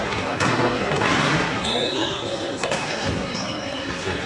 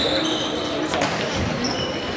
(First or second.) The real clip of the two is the second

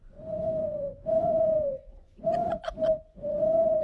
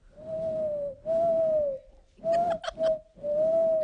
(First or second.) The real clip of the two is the second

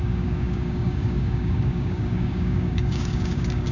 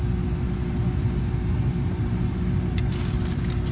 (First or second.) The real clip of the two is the second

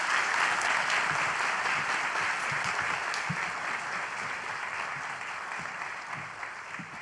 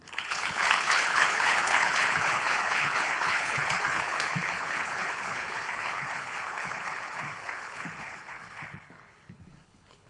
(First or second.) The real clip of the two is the first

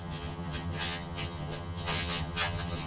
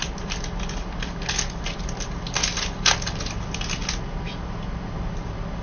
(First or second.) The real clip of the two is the second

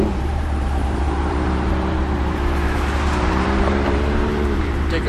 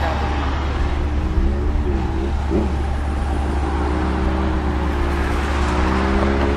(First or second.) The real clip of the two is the second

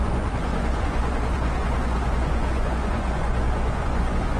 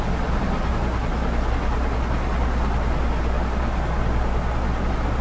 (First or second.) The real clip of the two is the second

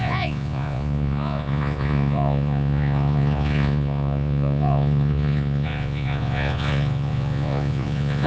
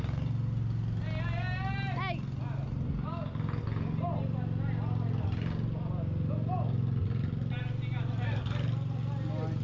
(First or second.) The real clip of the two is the second